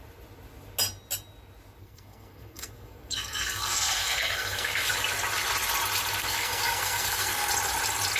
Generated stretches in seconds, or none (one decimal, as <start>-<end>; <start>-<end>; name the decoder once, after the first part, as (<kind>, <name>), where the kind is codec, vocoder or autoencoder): 1.8-4.9 (codec, SNAC); 6.2-7.5